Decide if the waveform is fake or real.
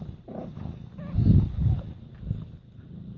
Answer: real